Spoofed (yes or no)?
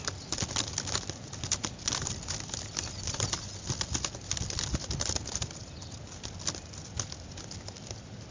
no